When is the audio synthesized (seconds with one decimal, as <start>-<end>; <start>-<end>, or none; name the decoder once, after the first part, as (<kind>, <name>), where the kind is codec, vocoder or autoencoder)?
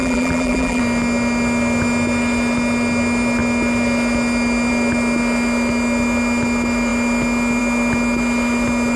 0.0-0.8 (vocoder, BigVGAN v2)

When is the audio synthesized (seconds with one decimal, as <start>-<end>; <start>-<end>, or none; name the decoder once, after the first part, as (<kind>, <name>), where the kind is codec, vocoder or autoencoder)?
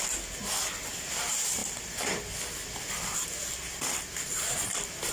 none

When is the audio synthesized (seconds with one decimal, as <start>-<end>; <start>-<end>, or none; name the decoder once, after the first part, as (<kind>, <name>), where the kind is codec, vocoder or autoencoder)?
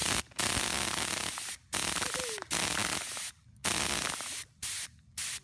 none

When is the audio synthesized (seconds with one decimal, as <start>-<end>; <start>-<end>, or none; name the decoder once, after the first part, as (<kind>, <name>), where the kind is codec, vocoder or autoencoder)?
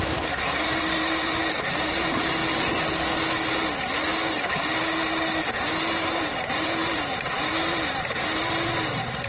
0.0-2.4 (vocoder, BigVGAN v2); 5.4-9.3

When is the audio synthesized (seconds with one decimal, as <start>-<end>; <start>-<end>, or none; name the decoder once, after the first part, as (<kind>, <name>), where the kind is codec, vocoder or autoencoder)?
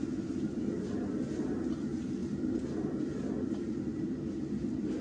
none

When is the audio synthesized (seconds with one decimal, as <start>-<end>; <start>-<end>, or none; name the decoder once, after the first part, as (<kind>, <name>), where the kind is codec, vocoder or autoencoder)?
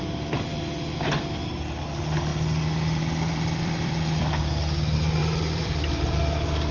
2.3-4.4 (vocoder, BigVGAN v2); 5.2-6.2